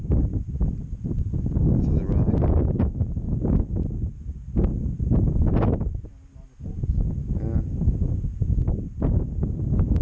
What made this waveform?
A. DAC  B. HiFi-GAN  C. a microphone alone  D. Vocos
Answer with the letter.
C